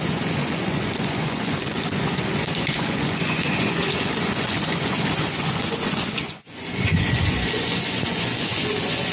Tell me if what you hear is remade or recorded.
remade